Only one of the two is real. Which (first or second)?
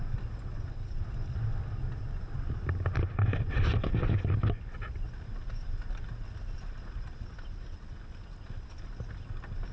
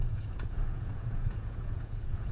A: first